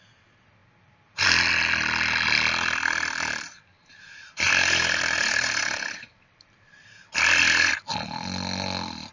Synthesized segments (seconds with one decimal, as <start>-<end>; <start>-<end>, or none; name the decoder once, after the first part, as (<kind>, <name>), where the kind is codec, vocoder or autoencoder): 3.8-7.7 (vocoder, BigVGAN v2)